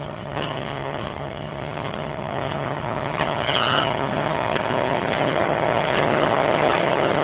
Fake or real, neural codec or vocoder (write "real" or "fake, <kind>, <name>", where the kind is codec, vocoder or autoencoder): fake, vocoder, HiFi-GAN